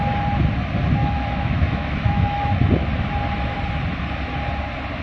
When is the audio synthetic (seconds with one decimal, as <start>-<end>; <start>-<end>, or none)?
1.0-2.5